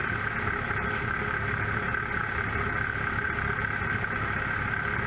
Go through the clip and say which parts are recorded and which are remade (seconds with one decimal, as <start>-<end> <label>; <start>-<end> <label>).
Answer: 0.0-5.1 recorded